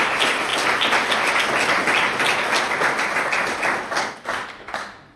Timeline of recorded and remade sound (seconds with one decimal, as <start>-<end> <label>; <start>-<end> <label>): 0.0-5.2 recorded